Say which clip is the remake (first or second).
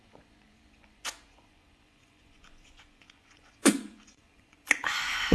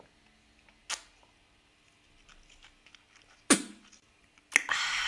first